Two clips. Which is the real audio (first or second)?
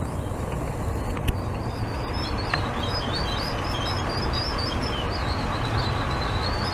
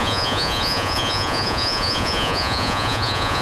first